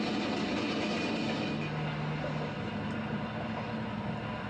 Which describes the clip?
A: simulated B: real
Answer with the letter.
B